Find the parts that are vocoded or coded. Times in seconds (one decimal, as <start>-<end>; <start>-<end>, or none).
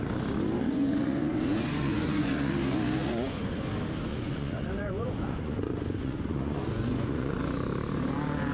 0.6-2.5; 3.0-3.6; 4.1-7.4